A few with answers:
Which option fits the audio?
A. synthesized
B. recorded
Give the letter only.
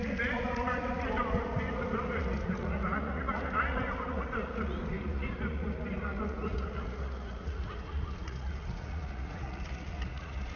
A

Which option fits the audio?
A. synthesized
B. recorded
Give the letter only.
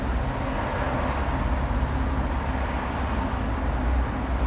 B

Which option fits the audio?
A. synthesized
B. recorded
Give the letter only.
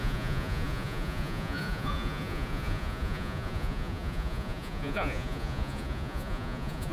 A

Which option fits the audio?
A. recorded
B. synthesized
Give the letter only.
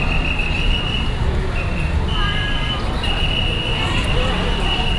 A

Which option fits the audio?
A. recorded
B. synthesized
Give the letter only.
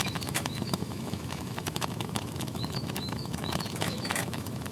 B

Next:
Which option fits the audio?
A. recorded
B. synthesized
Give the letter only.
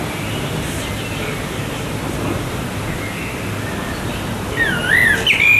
A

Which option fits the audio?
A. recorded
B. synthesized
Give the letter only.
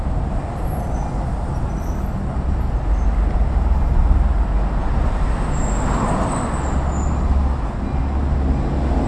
A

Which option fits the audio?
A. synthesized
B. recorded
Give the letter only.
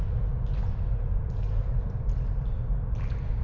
B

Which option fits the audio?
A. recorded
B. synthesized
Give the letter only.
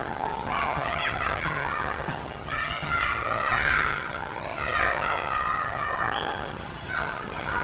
B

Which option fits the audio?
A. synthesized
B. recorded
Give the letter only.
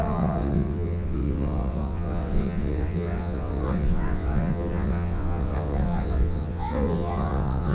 A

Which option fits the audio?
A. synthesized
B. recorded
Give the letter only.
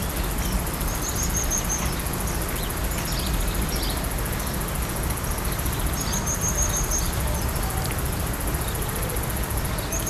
B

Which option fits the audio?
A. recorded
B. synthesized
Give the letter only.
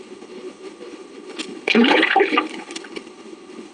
B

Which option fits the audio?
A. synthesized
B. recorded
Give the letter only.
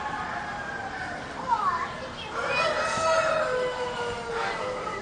B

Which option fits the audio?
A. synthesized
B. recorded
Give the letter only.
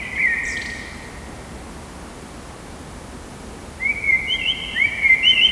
B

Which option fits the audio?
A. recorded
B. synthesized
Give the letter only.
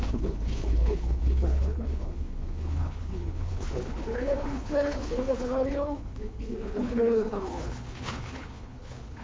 B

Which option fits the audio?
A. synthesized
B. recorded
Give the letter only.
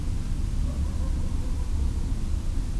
B